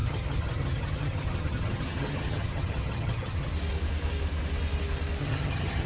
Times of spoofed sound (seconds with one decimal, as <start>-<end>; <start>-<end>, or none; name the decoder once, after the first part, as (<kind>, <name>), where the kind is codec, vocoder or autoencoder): 0.0-3.5 (vocoder, HiFi-GAN); 5.2-5.9